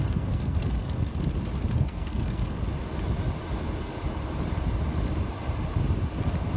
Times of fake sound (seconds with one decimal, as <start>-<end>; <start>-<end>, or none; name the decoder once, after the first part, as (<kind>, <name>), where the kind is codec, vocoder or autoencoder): 0.0-1.1 (codec, SNAC); 1.8-2.7